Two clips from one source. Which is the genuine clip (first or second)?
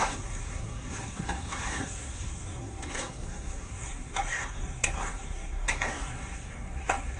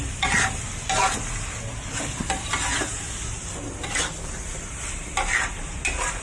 second